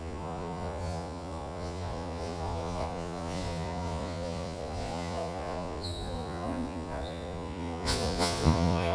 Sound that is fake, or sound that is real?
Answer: fake